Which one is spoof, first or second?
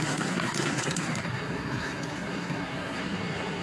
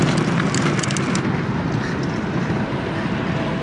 first